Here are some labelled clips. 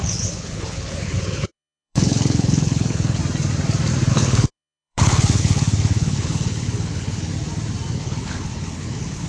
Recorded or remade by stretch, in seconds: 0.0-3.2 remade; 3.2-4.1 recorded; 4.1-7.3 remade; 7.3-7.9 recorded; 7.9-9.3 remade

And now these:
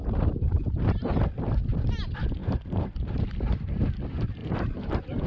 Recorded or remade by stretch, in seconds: 0.0-0.8 remade; 0.8-2.4 recorded; 2.4-3.7 remade; 3.7-4.4 recorded; 4.4-5.3 remade

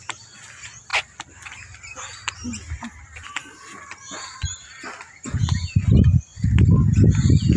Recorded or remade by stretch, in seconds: 0.0-7.6 recorded

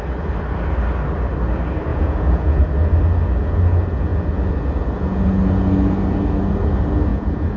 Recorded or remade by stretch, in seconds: 0.0-1.9 recorded; 1.9-2.6 remade; 2.6-7.1 recorded; 7.1-7.6 remade

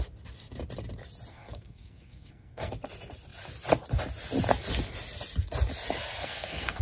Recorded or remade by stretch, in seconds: 0.0-1.3 recorded; 1.3-2.7 remade; 2.7-6.2 recorded; 6.2-6.8 remade